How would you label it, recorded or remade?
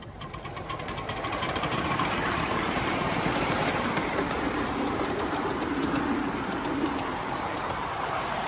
remade